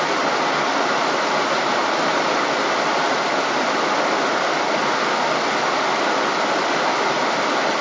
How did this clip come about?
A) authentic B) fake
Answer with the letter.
A